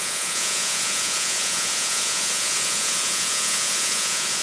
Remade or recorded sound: remade